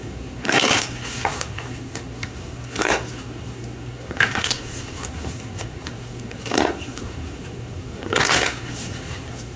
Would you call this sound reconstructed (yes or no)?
yes